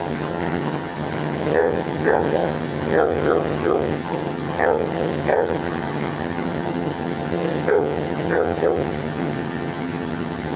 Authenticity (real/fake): fake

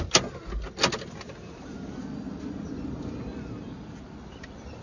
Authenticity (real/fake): real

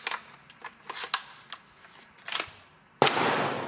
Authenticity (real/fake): real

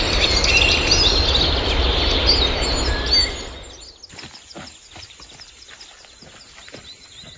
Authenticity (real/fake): real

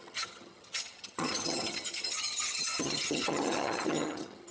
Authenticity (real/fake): fake